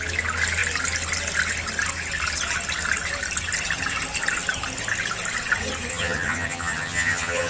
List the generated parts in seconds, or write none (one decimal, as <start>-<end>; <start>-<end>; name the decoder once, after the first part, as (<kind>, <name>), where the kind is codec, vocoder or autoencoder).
5.9-7.5 (vocoder, HiFi-GAN)